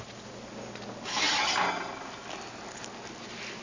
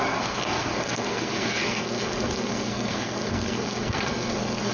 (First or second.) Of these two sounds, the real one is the first